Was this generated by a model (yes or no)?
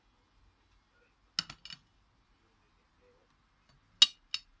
no